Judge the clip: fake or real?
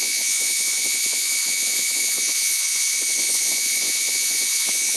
fake